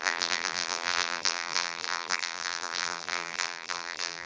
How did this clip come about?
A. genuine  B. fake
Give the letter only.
B